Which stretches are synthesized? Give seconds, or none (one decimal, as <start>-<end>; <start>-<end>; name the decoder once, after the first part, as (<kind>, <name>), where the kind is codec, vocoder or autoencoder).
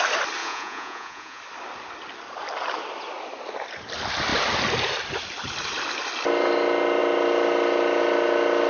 0.4-1.4 (vocoder, Vocos)